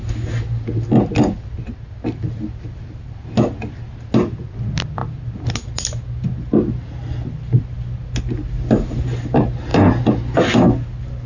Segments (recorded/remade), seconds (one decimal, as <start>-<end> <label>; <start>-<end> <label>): 0.0-11.3 recorded